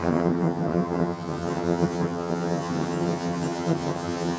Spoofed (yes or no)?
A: yes